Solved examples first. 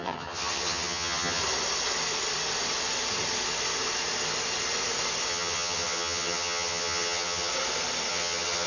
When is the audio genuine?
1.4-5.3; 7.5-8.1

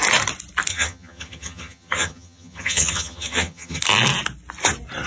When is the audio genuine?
0.0-0.7; 3.8-5.1

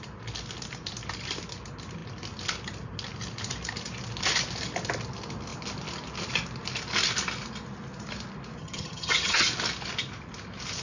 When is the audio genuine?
0.0-8.6; 9.5-10.8

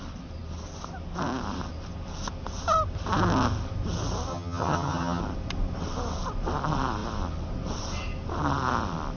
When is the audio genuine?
0.0-4.3; 5.2-9.2

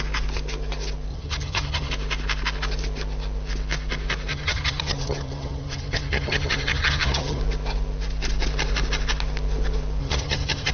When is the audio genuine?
0.0-1.1; 1.9-4.3; 7.4-10.0

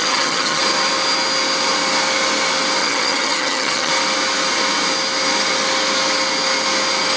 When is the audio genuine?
0.6-2.8; 3.9-7.2